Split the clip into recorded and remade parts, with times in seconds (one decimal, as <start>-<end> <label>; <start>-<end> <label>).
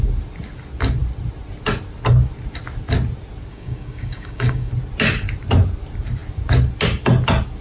0.0-3.5 recorded; 3.5-4.7 remade; 4.7-7.6 recorded